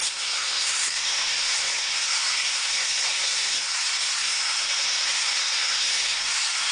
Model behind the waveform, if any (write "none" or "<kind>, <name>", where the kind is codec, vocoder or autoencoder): codec, SNAC